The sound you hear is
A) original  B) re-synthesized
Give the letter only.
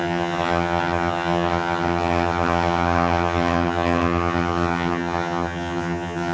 B